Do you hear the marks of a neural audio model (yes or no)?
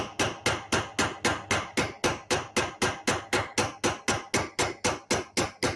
no